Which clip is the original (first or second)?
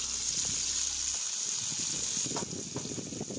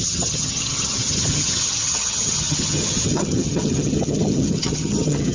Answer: first